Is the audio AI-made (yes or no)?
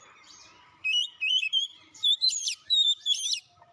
yes